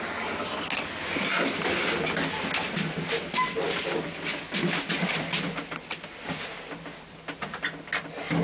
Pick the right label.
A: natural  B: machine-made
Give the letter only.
A